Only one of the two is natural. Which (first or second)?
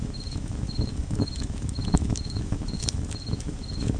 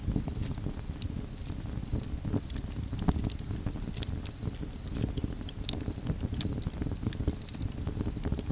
second